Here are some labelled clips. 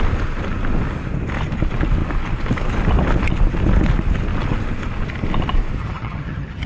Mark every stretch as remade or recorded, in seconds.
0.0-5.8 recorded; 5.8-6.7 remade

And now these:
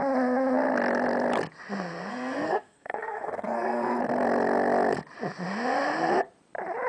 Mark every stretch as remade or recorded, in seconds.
0.0-2.1 recorded; 2.1-4.0 remade; 4.0-6.9 recorded

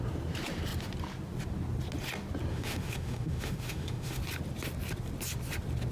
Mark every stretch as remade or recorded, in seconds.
0.0-2.5 recorded; 2.5-4.2 remade; 4.2-5.9 recorded

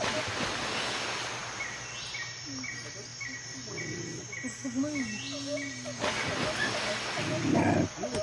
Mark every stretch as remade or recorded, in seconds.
0.0-8.2 recorded

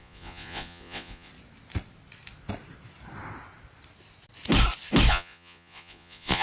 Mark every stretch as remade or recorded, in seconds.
0.0-1.3 remade; 1.3-5.1 recorded; 5.1-6.4 remade

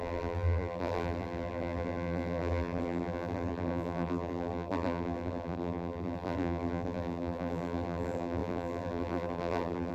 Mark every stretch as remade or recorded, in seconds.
0.0-9.9 remade

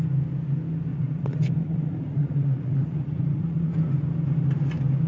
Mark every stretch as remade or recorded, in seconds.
0.0-0.9 recorded; 0.9-3.7 remade; 3.7-5.1 recorded